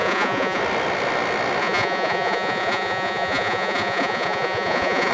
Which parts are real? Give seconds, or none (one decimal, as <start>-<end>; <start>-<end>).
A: 0.6-1.6